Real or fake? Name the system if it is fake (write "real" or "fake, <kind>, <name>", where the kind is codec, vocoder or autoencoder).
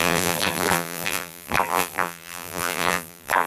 fake, vocoder, BigVGAN v2